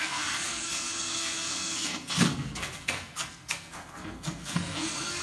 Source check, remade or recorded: remade